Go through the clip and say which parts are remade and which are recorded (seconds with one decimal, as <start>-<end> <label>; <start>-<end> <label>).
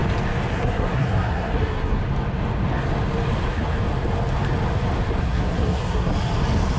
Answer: 0.0-0.5 recorded; 0.5-2.0 remade; 2.0-5.2 recorded; 5.2-6.1 remade; 6.1-6.8 recorded